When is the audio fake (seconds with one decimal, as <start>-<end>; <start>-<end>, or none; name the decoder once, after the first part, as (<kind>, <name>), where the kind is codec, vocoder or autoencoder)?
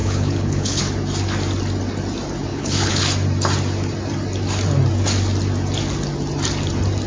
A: 0.0-0.8 (codec, HILCodec); 2.5-3.0